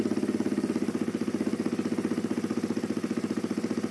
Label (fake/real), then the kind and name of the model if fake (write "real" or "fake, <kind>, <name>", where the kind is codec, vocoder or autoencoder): real